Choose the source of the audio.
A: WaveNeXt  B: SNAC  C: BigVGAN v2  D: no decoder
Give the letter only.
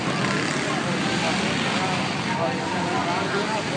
D